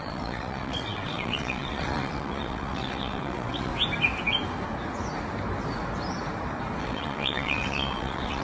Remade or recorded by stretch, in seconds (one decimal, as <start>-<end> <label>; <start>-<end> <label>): 0.0-3.7 remade; 3.7-6.8 recorded; 6.8-8.4 remade